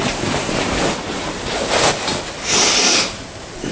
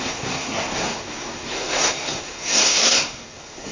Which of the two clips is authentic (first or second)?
first